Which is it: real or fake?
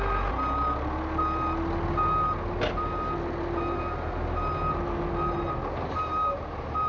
real